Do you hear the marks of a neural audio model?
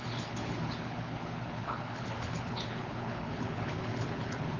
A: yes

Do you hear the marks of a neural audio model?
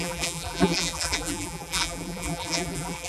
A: yes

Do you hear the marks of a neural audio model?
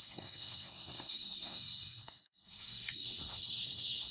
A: yes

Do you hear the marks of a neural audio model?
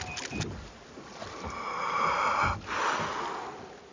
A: no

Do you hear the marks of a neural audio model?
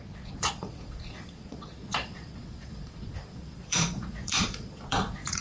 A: yes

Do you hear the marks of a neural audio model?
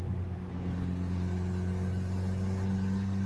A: no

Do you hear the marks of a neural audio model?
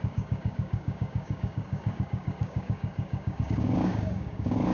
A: yes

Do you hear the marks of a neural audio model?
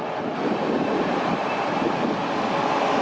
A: no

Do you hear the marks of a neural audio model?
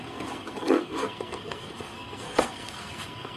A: yes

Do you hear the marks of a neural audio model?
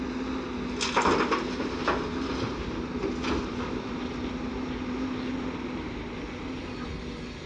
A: no